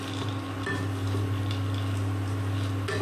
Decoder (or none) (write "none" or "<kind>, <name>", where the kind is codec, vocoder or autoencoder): none